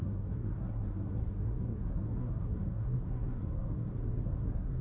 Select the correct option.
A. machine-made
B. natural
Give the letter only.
A